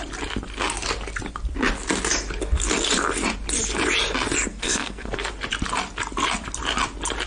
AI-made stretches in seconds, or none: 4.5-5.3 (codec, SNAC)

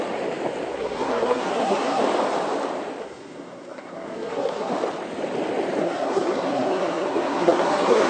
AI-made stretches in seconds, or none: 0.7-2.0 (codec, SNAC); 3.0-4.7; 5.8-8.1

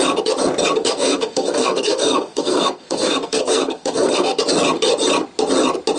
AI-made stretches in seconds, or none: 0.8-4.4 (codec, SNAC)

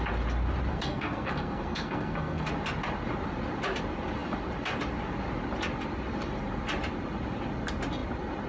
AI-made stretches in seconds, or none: 0.7-2.5 (codec, SNAC)

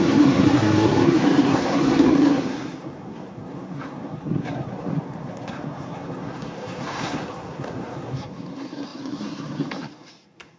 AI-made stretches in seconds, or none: 0.0-10.6 (codec, SNAC)

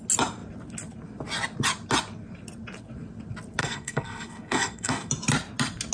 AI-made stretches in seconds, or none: 3.6-5.1 (codec, SNAC)